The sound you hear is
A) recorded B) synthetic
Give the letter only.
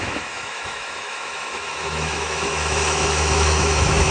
B